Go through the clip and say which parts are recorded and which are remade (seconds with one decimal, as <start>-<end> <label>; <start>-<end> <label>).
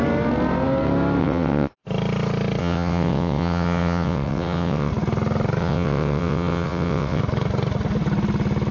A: 0.0-1.2 recorded; 1.2-1.7 remade; 1.7-2.6 recorded; 2.6-4.9 remade; 4.9-5.6 recorded; 5.6-7.2 remade; 7.2-8.7 recorded